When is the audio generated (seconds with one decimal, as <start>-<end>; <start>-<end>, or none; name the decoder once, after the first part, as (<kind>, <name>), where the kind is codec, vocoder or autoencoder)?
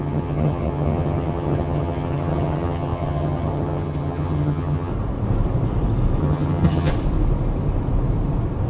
0.0-4.9 (vocoder, HiFi-GAN); 6.2-6.9